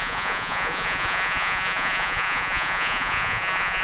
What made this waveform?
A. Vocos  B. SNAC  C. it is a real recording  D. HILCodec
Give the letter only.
A